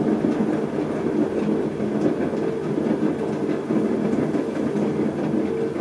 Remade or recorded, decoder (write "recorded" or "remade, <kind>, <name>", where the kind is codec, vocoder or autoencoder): recorded